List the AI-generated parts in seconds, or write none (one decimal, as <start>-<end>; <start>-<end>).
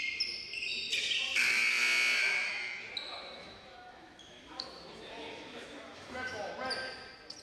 2.2-2.9; 3.4-6.5